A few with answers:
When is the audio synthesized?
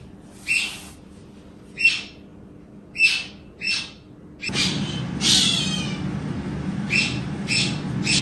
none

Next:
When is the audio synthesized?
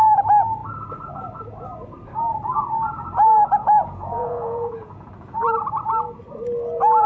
3.6-5.1 (vocoder, Vocos)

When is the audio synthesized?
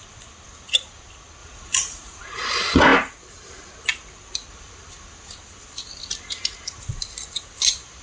1.4-2.2 (vocoder, Vocos)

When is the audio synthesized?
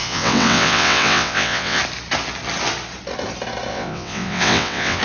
0.0-1.8 (vocoder, WaveNeXt); 3.7-5.0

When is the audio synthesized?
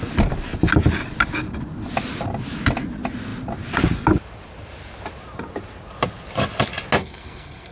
7.0-7.7 (codec, SNAC)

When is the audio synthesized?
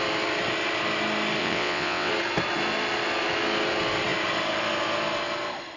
1.4-2.1 (vocoder, WaveNeXt)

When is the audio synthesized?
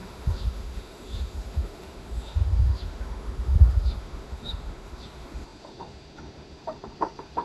0.0-7.4 (autoencoder, DAC-VAE)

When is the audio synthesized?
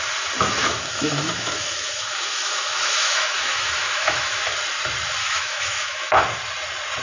0.6-4.4 (autoencoder, DAC-VAE); 5.2-6.2